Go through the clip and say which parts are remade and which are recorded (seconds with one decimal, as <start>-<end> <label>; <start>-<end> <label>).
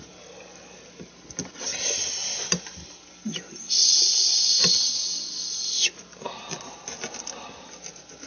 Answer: 0.0-3.8 recorded; 3.8-4.4 remade; 4.4-8.3 recorded